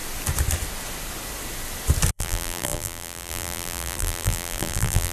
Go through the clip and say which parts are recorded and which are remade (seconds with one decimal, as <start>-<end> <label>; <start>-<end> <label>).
0.0-2.1 recorded; 2.1-5.1 remade